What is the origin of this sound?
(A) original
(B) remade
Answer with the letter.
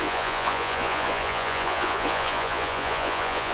B